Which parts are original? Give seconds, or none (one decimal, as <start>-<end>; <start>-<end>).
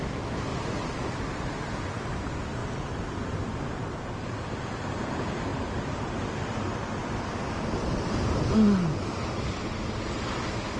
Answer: 0.0-10.8